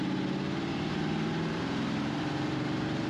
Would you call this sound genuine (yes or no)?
no